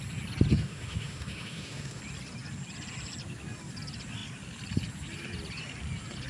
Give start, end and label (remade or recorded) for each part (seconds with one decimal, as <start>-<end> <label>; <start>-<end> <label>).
0.0-0.5 recorded; 0.5-2.0 remade; 2.0-6.3 recorded